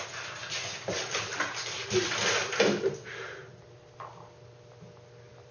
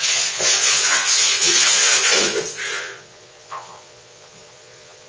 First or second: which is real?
first